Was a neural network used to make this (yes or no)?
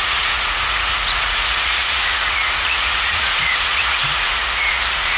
yes